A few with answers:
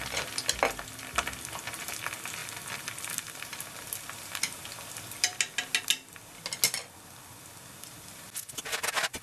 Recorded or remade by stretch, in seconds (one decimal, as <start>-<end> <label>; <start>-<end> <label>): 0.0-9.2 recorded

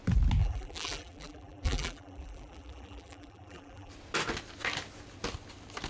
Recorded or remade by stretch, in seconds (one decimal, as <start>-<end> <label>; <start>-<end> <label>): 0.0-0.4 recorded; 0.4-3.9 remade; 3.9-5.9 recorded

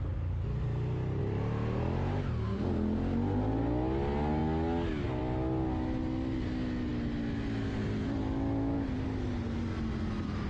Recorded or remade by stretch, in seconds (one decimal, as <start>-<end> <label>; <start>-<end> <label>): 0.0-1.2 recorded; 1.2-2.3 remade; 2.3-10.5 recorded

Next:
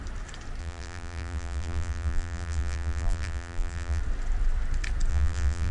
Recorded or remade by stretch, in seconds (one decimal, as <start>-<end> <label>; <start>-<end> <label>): 0.0-0.6 recorded; 0.6-4.0 remade; 4.0-5.1 recorded; 5.1-5.7 remade

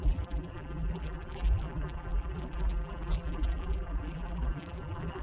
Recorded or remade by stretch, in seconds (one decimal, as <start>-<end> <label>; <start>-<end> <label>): 0.0-5.2 remade

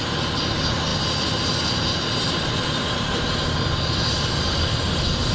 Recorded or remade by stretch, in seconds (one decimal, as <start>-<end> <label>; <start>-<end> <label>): 0.0-5.3 recorded

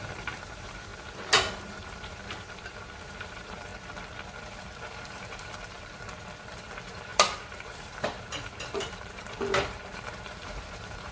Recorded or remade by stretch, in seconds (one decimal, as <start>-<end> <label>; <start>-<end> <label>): 0.0-0.9 remade; 0.9-1.5 recorded; 1.5-3.7 remade; 3.7-4.4 recorded; 4.4-11.1 remade